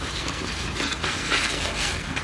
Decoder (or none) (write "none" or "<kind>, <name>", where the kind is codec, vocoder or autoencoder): codec, SNAC